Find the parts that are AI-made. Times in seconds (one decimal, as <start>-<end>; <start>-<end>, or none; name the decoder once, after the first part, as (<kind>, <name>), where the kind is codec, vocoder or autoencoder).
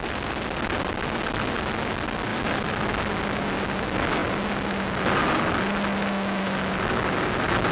none